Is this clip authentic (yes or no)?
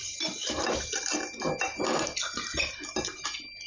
yes